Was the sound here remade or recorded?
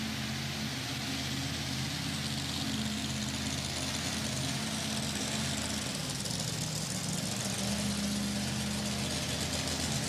recorded